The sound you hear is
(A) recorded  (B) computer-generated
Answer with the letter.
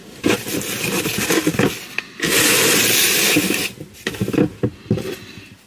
A